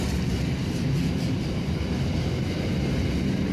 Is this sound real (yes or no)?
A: yes